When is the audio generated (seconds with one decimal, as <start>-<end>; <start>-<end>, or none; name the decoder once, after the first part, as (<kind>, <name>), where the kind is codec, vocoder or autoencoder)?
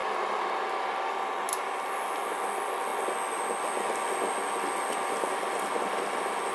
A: none